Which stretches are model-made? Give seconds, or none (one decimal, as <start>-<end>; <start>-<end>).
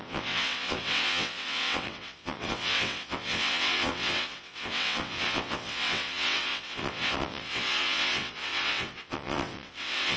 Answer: 0.0-10.2